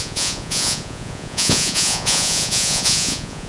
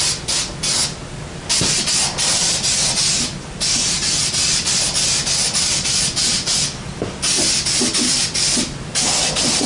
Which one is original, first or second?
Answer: second